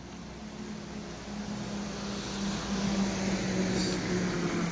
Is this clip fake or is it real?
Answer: real